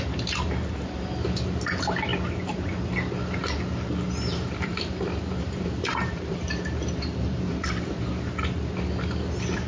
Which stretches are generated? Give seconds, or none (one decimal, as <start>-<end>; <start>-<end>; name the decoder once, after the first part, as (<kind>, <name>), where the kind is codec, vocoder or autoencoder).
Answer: 4.3-8.3 (vocoder, BigVGAN v2)